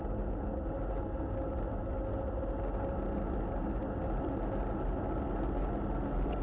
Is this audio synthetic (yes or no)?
no